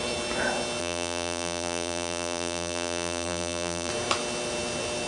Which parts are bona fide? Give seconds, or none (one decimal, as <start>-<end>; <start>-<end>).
0.0-0.8; 3.9-5.1